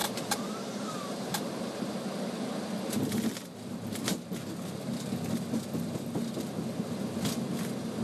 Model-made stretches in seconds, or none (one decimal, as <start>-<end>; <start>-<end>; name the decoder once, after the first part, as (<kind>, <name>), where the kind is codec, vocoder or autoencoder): 0.0-1.8 (vocoder, BigVGAN v2)

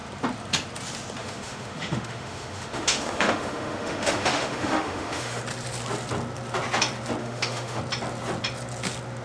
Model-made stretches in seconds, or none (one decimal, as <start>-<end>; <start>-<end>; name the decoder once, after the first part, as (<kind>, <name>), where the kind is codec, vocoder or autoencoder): 1.2-5.4 (autoencoder, DAC-VAE); 7.2-7.8